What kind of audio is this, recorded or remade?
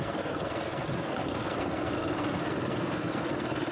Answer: remade